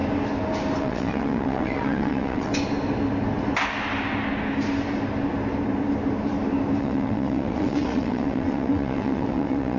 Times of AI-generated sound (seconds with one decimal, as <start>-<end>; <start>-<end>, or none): 0.8-2.5; 6.8-9.8